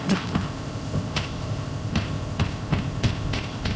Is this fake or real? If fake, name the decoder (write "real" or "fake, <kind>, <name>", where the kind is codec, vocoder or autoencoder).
fake, codec, ZipCodec